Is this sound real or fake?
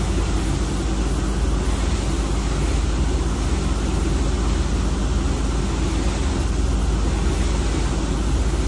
real